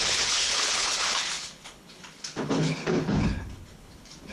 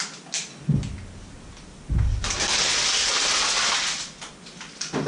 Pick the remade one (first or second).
first